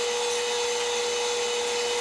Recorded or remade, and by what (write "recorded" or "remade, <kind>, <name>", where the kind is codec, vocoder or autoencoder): recorded